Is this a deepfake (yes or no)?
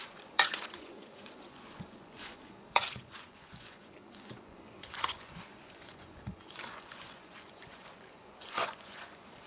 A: yes